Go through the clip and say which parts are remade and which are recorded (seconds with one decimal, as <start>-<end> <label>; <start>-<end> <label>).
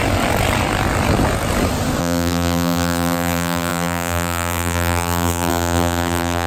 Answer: 0.0-2.0 recorded; 2.0-6.5 remade